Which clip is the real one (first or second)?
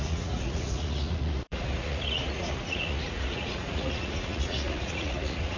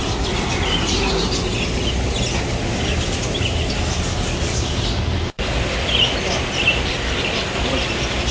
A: second